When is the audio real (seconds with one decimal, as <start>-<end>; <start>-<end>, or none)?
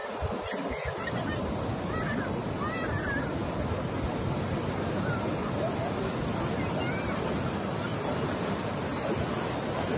0.0-10.0